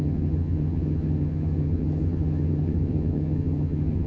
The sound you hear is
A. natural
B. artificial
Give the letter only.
B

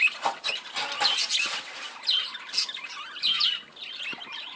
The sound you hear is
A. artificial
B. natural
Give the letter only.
B